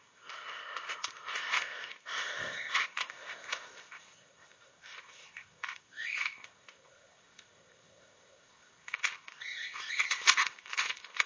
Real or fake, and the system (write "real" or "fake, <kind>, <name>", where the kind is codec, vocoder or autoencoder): fake, codec, ZipCodec